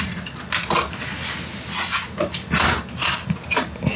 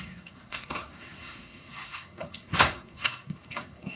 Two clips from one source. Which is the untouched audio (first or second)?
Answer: first